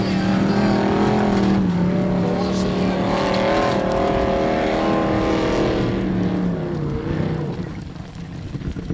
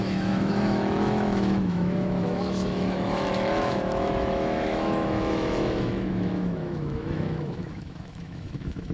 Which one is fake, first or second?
second